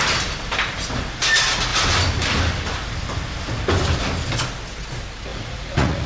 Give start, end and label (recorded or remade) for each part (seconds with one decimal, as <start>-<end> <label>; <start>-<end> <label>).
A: 0.0-5.3 recorded; 5.3-6.1 remade